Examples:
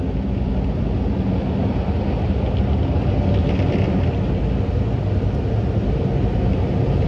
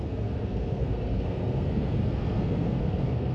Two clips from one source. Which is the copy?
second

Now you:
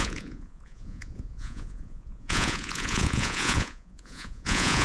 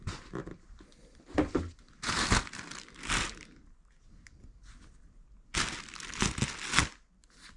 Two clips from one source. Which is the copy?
first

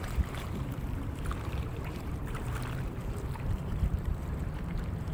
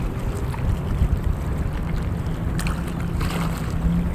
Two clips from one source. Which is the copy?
first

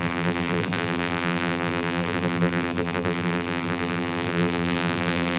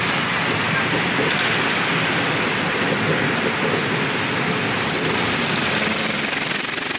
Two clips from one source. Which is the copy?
first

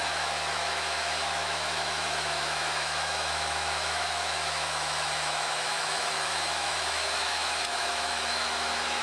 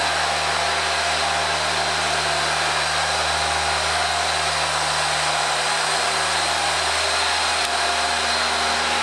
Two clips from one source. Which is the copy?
first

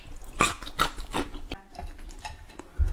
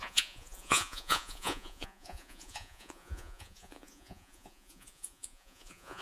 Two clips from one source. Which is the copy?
second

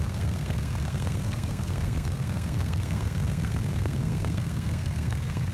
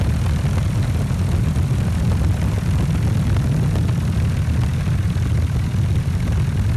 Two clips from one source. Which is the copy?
first